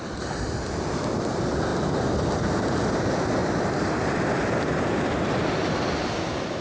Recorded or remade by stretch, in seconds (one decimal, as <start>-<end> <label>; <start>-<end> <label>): 0.0-6.6 recorded